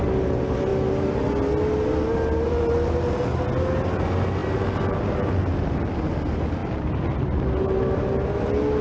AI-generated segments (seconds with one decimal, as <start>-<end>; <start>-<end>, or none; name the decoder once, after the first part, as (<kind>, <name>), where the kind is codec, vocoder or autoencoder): none

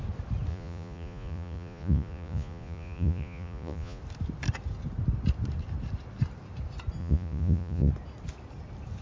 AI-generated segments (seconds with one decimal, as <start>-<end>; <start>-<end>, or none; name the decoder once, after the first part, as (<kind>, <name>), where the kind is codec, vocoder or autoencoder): 0.5-4.0 (vocoder, Vocos); 7.0-7.9

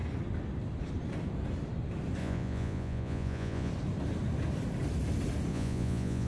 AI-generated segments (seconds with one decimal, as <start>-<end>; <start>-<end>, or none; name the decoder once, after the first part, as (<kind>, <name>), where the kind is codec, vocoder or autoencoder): 2.2-3.7 (vocoder, Vocos); 5.5-6.3

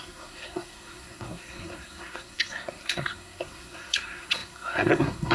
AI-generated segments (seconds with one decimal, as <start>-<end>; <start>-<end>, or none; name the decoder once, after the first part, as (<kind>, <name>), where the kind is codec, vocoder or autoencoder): 0.0-5.3 (codec, SNAC)

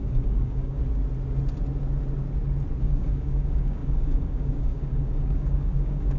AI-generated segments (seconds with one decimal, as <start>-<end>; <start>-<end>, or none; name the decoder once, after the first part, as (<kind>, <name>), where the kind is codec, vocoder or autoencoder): 0.0-0.8 (codec, DAC); 2.8-6.2

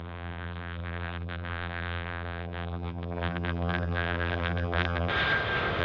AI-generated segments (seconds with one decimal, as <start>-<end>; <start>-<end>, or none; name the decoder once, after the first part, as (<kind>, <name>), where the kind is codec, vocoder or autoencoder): 0.0-5.1 (vocoder, BigVGAN v2)